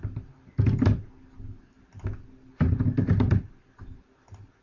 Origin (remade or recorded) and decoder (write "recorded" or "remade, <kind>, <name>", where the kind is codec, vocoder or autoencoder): recorded